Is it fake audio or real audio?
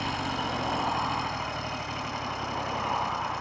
real